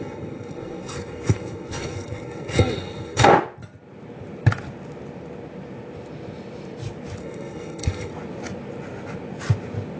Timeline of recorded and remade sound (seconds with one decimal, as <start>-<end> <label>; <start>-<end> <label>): 0.0-3.3 remade; 3.3-7.2 recorded; 7.2-8.1 remade; 8.1-10.0 recorded